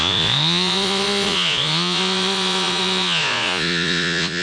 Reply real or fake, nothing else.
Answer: fake